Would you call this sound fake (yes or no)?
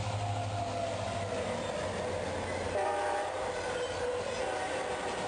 no